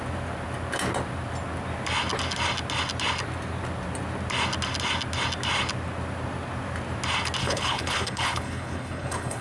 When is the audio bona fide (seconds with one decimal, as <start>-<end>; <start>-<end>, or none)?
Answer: 0.0-7.4